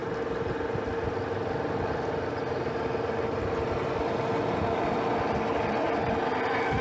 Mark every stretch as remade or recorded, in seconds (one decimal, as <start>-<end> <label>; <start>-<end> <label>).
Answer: 0.0-5.5 recorded; 5.5-6.1 remade; 6.1-6.8 recorded